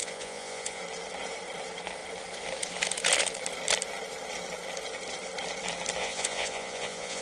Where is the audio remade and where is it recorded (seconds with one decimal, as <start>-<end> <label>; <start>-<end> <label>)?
0.0-0.8 remade; 0.8-6.0 recorded; 6.0-7.2 remade